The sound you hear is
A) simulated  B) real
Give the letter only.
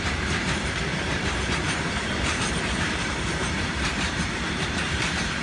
A